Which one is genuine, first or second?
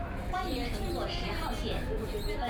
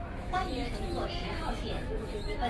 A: first